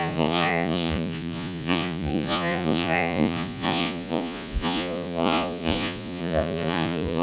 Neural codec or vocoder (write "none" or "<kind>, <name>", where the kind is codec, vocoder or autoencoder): vocoder, Vocos